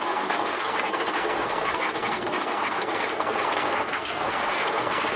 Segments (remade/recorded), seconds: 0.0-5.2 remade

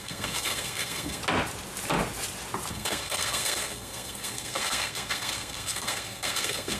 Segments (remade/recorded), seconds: 0.0-1.2 remade; 1.2-2.7 recorded; 2.7-6.8 remade

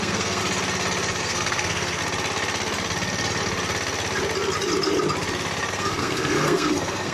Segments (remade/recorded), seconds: 0.0-0.4 remade; 0.4-1.2 recorded; 1.2-2.0 remade; 2.0-5.7 recorded; 5.7-7.1 remade

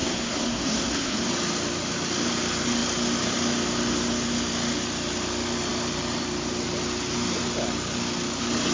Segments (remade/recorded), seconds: 0.0-1.3 remade; 1.3-8.7 recorded

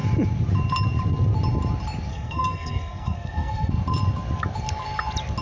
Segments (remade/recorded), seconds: 0.0-2.1 recorded; 2.1-3.7 remade; 3.7-5.4 recorded